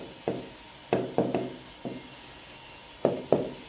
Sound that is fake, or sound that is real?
real